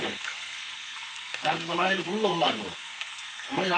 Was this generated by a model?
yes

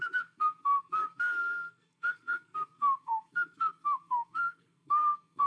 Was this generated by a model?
yes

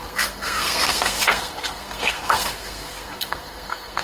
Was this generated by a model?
yes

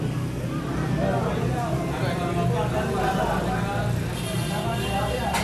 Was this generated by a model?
no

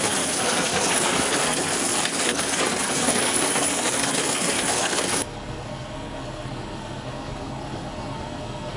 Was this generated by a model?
yes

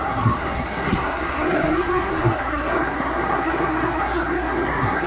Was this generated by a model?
yes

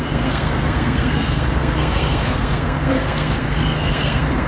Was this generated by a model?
yes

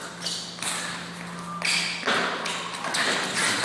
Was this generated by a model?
no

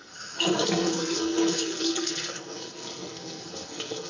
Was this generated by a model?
yes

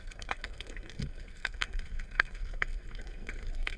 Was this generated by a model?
yes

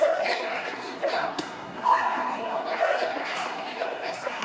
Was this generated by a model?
yes